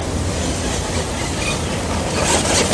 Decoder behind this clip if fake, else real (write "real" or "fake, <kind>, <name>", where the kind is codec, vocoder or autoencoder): real